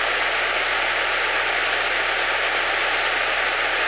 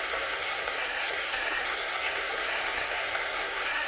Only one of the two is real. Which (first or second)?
first